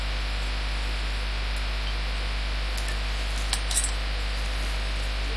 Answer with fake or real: real